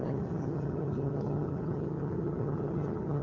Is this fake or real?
fake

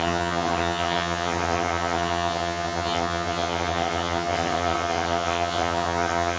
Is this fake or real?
fake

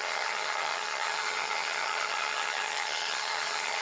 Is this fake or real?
fake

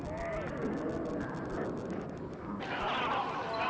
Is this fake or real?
real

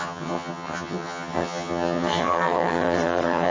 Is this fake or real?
fake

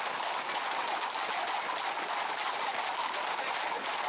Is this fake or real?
real